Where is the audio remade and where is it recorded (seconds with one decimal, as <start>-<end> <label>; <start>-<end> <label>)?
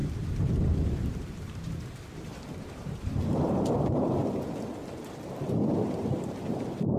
0.0-4.2 remade; 4.2-4.9 recorded; 4.9-7.0 remade